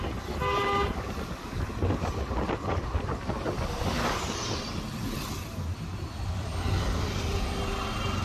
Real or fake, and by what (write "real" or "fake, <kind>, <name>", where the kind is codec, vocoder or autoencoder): real